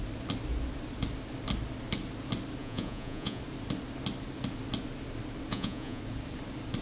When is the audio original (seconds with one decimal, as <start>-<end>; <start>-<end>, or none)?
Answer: 0.0-2.6; 3.4-5.5; 6.0-6.8